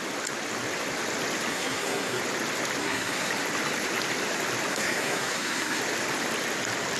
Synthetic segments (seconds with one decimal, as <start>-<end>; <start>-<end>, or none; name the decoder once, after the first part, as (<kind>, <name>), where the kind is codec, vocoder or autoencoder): 1.5-2.2 (codec, SNAC); 2.8-3.3; 4.7-5.8